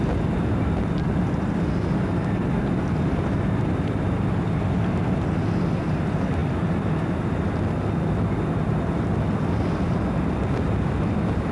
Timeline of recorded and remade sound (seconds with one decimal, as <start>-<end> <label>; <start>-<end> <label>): 0.0-11.5 recorded